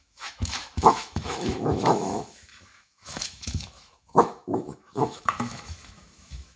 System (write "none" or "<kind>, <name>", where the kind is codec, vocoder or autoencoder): autoencoder, DAC-VAE